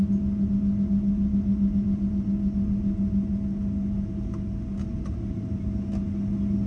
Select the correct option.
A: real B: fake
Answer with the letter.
A